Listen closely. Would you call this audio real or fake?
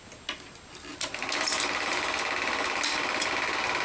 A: real